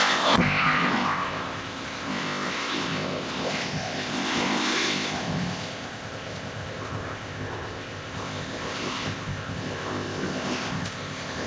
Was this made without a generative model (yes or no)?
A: no